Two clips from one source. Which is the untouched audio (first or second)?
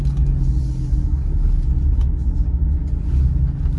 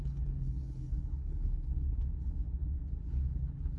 first